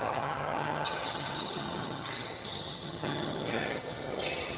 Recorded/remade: remade